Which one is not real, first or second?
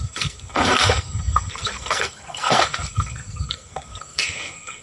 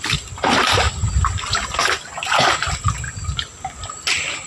first